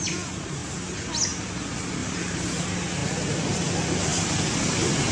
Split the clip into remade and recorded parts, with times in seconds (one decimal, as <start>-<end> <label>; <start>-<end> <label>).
0.0-2.0 recorded; 2.0-2.6 remade; 2.6-5.1 recorded